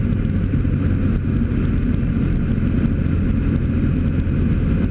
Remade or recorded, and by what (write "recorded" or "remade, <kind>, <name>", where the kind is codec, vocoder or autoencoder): recorded